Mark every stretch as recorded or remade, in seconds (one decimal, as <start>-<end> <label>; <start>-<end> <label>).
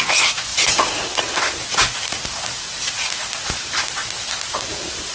0.0-0.5 remade; 0.5-3.6 recorded; 3.6-4.0 remade; 4.0-4.5 recorded; 4.5-5.1 remade